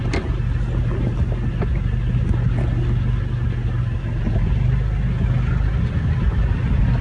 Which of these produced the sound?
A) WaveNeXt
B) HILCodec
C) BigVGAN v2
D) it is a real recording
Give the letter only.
D